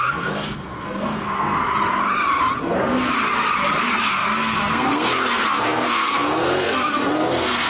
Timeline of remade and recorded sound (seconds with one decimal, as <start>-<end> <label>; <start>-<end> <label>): 0.0-1.6 remade; 1.6-2.6 recorded; 2.6-3.1 remade; 3.1-3.8 recorded; 3.8-7.7 remade